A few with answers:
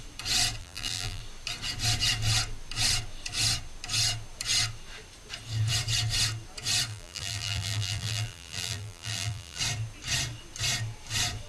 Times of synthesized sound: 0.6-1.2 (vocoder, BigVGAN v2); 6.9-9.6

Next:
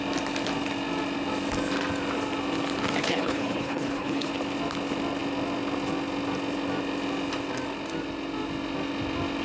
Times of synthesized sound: 3.0-4.3 (codec, HILCodec)

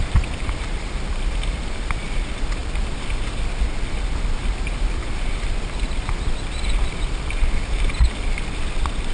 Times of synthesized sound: 0.0-2.6 (vocoder, BigVGAN v2); 4.7-9.1